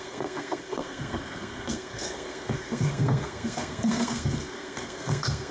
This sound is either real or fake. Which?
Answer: fake